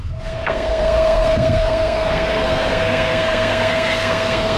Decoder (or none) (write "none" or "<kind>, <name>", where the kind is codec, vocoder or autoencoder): codec, SNAC